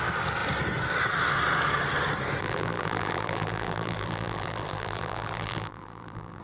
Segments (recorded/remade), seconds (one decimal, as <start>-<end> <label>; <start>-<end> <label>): 0.0-2.4 recorded; 2.4-6.4 remade